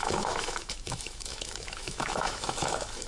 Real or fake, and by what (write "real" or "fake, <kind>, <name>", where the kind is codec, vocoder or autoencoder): fake, autoencoder, DAC-VAE